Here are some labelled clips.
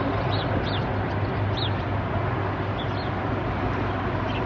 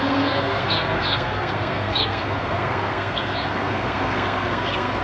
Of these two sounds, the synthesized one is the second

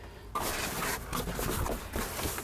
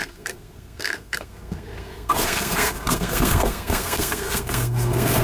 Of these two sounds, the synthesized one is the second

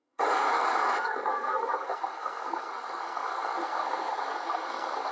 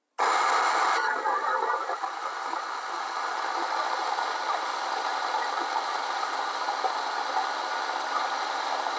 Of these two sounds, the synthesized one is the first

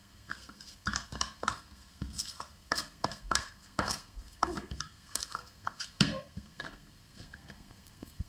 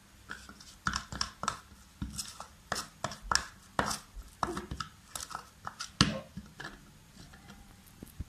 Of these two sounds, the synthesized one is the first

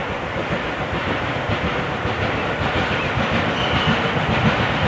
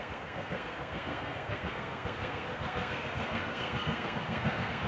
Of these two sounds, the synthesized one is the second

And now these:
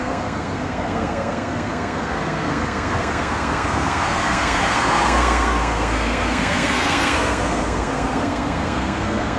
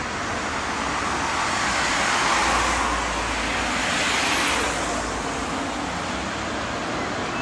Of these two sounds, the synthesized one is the first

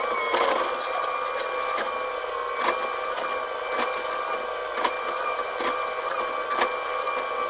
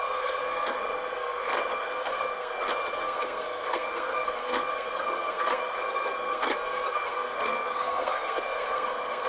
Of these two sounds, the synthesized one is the second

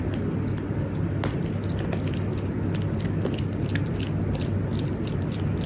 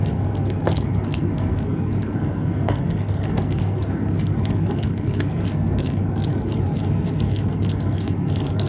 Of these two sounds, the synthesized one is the second